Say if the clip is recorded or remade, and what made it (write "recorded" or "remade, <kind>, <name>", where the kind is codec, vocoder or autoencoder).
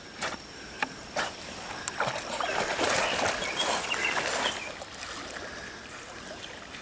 recorded